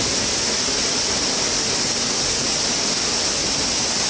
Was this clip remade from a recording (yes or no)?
no